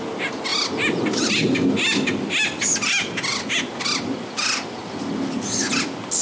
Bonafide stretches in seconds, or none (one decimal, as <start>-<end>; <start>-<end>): 0.0-6.2